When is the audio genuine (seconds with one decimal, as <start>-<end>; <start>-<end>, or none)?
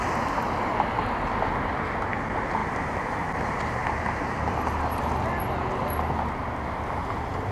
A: 0.0-7.5